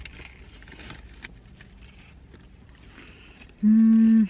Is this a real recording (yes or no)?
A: yes